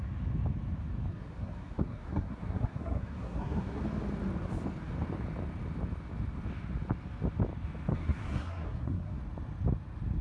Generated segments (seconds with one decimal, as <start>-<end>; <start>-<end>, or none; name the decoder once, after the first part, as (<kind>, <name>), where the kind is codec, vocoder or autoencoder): 1.1-3.8 (codec, SNAC); 7.9-9.2